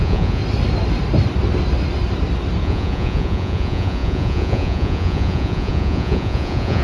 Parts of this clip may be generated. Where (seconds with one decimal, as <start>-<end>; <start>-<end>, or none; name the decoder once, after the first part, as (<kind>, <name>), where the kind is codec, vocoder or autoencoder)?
0.0-0.4 (vocoder, Vocos); 2.6-6.8